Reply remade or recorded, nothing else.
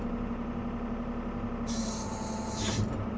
recorded